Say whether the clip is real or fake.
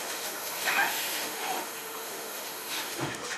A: fake